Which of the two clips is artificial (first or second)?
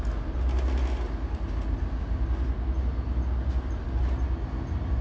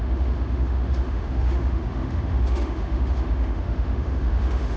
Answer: second